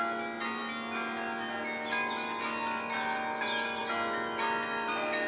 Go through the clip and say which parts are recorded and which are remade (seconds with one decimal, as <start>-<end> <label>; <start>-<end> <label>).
0.0-5.3 recorded